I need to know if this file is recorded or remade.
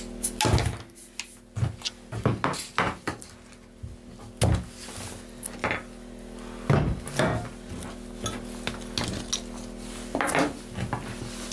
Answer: recorded